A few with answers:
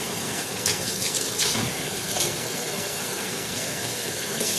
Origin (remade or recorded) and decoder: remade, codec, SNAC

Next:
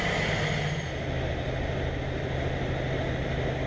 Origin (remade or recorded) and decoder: recorded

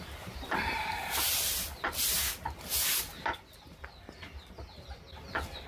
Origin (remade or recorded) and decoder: recorded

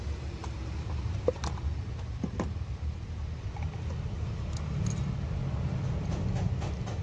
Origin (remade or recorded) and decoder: recorded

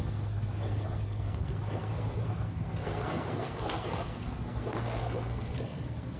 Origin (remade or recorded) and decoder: remade, codec, SNAC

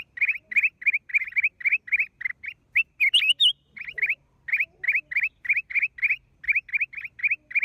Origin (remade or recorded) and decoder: recorded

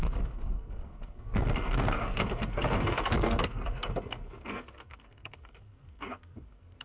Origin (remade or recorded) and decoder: remade, codec, SNAC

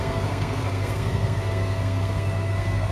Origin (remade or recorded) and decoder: remade, codec, SNAC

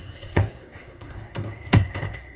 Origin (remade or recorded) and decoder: remade, codec, SNAC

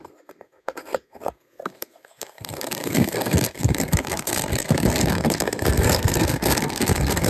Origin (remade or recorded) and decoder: remade, codec, SNAC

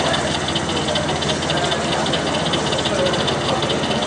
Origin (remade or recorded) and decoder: recorded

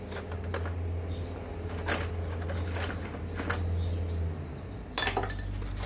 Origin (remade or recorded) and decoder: recorded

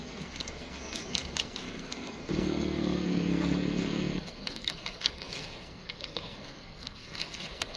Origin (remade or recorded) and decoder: remade, codec, SNAC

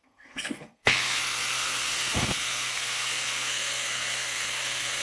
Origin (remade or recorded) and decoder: remade, codec, SNAC